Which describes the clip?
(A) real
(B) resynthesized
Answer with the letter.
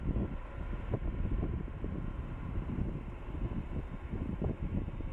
A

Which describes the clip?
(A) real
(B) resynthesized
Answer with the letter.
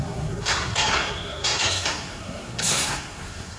B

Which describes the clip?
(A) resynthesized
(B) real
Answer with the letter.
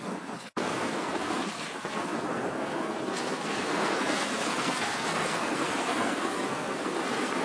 A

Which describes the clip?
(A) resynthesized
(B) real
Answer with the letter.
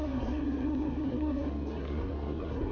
A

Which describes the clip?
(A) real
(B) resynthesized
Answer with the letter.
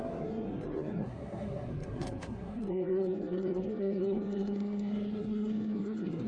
B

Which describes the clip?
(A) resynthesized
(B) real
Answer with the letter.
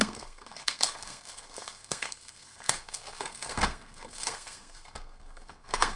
A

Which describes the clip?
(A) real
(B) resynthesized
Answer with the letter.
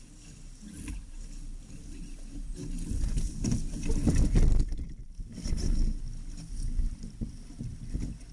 A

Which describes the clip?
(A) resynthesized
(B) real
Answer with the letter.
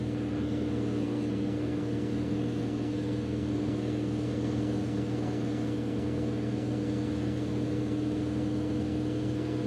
A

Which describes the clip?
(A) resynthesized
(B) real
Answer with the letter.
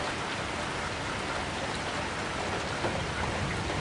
B